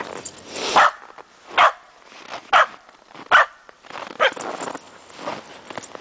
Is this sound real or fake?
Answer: real